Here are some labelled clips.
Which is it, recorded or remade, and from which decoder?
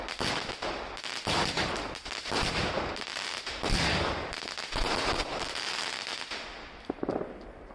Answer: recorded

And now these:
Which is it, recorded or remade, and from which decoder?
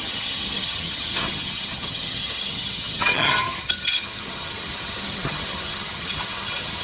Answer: remade, vocoder, HiFi-GAN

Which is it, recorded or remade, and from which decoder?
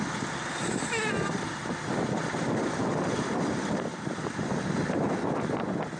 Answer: recorded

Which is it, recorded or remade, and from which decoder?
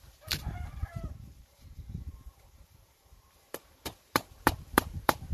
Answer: remade, vocoder, BigVGAN v2